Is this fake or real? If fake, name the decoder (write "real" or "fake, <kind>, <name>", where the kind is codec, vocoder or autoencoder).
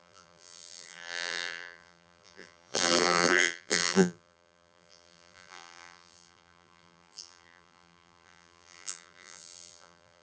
fake, vocoder, BigVGAN v2